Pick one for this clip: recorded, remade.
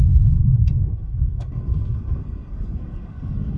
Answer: remade